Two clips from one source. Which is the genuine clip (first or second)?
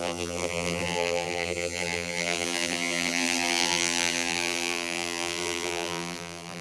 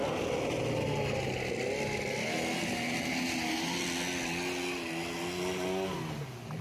second